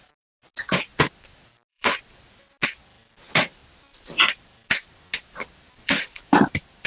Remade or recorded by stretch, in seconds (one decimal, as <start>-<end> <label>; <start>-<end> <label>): 0.0-1.7 recorded; 1.7-2.6 remade; 2.6-3.6 recorded; 3.6-6.9 remade